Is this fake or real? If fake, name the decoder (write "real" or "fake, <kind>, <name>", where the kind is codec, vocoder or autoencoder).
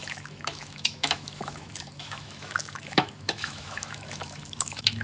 fake, autoencoder, DAC-VAE